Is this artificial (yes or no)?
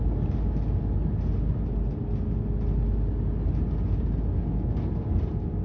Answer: no